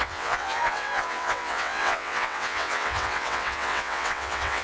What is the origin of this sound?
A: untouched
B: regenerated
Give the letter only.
B